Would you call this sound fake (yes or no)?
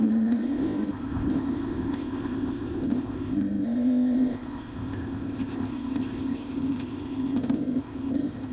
yes